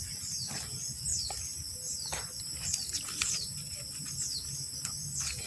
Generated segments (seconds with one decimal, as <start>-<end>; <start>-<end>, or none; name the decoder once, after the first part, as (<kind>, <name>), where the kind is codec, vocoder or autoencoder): none